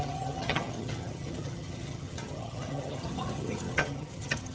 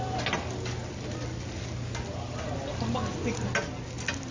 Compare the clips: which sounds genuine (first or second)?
second